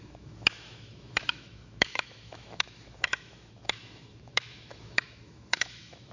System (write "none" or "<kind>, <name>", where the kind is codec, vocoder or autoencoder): autoencoder, DAC-VAE